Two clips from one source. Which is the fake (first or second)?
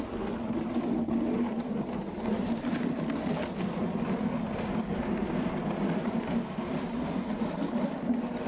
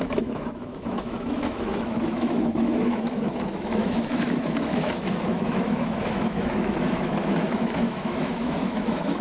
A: second